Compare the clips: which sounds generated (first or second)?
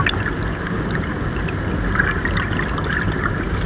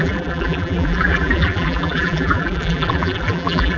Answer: second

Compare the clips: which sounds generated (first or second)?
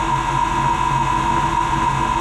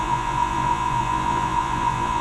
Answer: second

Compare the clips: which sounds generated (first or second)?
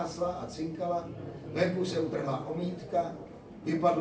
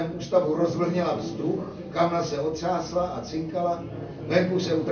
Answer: first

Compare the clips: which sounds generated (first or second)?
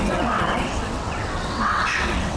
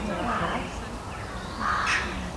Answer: first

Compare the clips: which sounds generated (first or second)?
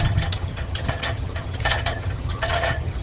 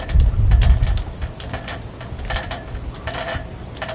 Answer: first